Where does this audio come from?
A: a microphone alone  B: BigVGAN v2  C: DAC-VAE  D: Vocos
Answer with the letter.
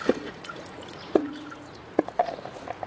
D